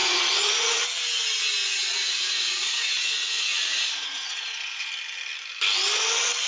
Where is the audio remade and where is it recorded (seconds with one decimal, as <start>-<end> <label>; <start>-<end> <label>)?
0.0-0.8 remade; 0.8-1.6 recorded; 1.6-4.9 remade; 4.9-6.5 recorded